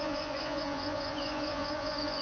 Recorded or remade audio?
remade